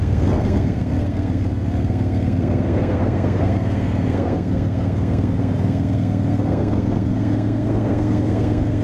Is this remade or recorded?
remade